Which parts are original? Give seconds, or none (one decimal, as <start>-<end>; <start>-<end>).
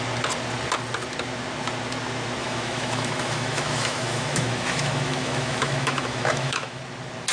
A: 0.0-2.4; 6.8-7.3